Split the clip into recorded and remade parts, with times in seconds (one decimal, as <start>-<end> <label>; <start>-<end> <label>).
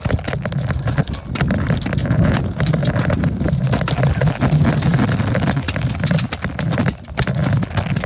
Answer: 0.0-2.0 recorded; 2.0-2.6 remade; 2.6-8.1 recorded